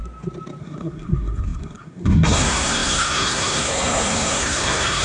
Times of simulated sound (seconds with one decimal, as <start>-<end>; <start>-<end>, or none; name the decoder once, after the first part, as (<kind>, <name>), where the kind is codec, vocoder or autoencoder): 0.6-5.0 (codec, SNAC)